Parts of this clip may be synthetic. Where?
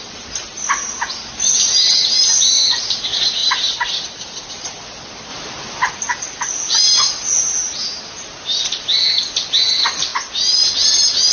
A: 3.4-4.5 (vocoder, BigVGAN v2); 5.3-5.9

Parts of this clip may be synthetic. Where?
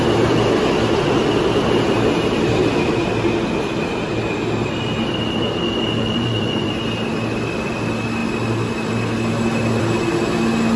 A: 6.0-6.7 (vocoder, Vocos)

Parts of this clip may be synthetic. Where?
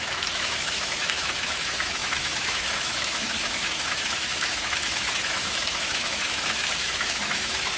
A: 0.0-7.8 (autoencoder, DAC-VAE)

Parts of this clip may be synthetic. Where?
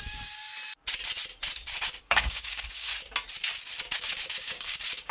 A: 0.0-0.5 (codec, DAC); 2.0-2.9; 4.0-5.1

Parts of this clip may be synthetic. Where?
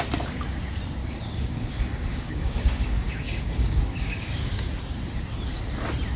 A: 1.0-4.7 (codec, DAC)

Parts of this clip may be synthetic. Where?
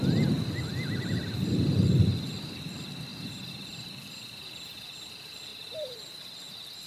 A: 3.1-5.1 (vocoder, BigVGAN v2); 5.5-6.1